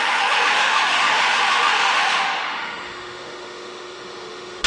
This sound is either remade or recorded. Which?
remade